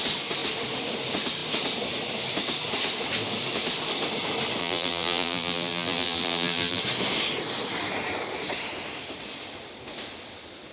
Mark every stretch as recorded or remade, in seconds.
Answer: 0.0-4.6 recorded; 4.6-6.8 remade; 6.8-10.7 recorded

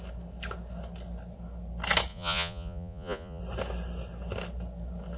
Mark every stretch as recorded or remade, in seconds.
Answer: 0.0-2.1 recorded; 2.1-3.4 remade; 3.4-5.2 recorded